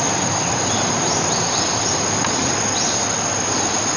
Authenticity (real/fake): real